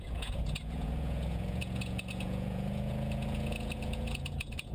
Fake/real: fake